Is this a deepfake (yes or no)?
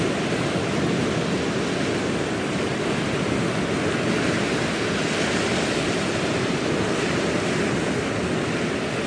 no